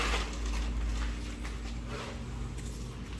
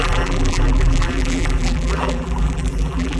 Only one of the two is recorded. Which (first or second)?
first